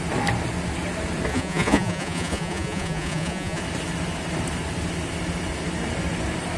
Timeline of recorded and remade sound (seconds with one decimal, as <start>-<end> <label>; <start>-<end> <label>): 0.0-1.3 recorded; 1.3-3.6 remade; 3.6-6.6 recorded